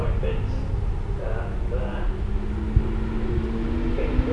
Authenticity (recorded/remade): recorded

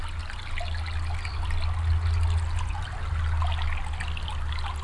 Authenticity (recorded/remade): recorded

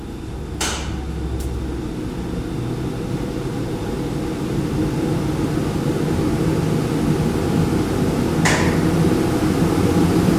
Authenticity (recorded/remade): recorded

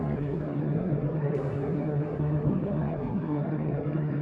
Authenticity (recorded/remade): remade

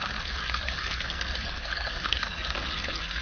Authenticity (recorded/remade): remade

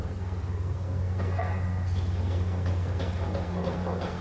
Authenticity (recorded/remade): remade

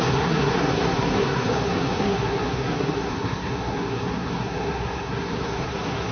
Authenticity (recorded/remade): remade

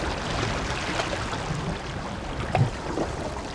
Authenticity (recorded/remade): recorded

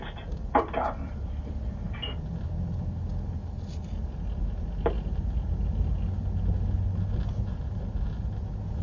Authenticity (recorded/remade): recorded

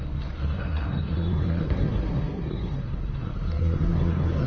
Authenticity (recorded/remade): remade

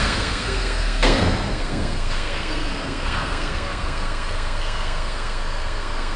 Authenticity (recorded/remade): remade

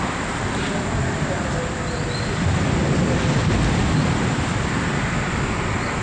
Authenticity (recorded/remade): recorded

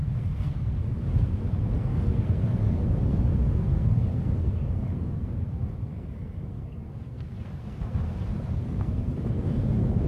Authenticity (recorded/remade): remade